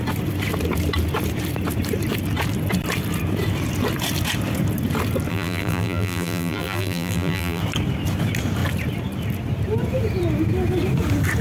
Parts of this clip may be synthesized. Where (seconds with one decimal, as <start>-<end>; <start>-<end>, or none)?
5.3-7.6